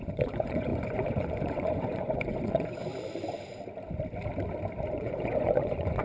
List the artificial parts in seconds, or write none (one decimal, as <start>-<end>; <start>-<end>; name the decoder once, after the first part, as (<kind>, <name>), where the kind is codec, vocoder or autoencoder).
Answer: 0.0-2.9 (vocoder, Vocos); 4.9-6.0